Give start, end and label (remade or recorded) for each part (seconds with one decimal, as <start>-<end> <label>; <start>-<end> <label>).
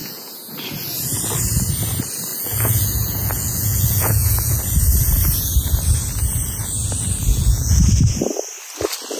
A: 0.0-0.5 remade; 0.5-2.3 recorded; 2.3-4.6 remade; 4.6-7.3 recorded; 7.3-7.8 remade; 7.8-9.2 recorded